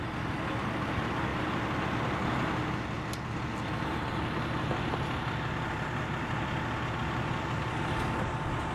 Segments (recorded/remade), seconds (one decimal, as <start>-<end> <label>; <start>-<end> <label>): 0.0-8.7 recorded